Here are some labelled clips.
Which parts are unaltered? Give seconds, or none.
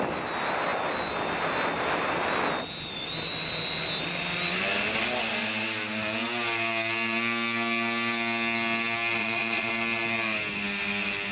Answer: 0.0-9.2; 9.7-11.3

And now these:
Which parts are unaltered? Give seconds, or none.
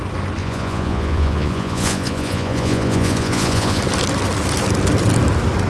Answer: 0.0-0.4; 3.8-5.7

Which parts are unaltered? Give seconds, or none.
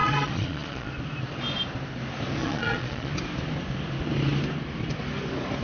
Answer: 0.9-2.4; 3.1-5.6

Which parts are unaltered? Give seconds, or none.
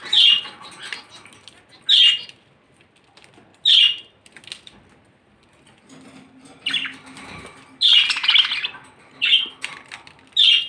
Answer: 0.0-10.7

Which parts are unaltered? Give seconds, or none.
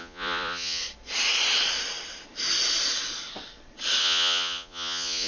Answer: 0.8-4.0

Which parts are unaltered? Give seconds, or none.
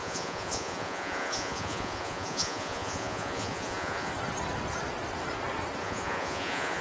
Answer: 4.1-5.8